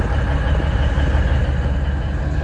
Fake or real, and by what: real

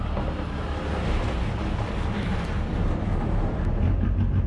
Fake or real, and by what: real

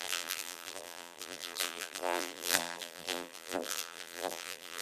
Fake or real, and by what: fake, vocoder, BigVGAN v2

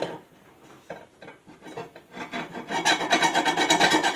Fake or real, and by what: real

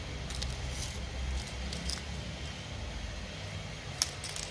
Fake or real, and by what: real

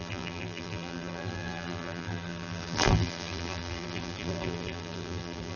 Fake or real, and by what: fake, vocoder, BigVGAN v2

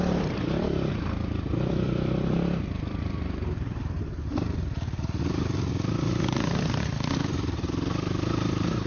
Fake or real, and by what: fake, vocoder, BigVGAN v2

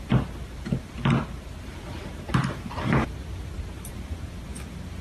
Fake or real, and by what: fake, vocoder, BigVGAN v2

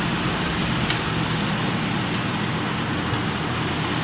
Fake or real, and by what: real